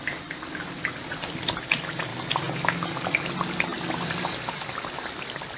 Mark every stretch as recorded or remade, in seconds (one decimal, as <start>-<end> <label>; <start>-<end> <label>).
0.0-5.6 recorded